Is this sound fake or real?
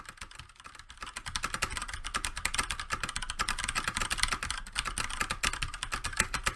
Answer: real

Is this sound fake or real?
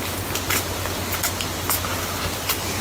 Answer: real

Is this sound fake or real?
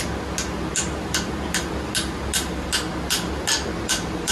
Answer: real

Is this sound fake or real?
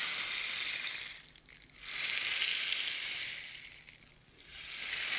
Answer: real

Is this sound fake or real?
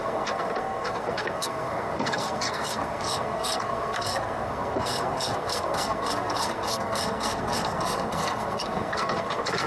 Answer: fake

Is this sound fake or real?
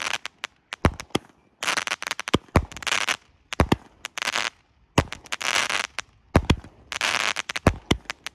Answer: real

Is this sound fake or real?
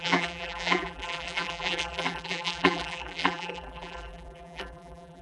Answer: fake